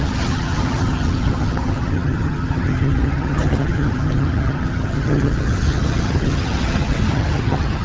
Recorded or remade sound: remade